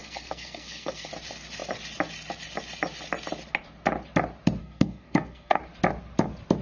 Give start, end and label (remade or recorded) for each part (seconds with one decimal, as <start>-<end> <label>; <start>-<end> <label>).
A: 0.0-1.1 remade; 1.1-4.6 recorded; 4.6-5.6 remade; 5.6-6.6 recorded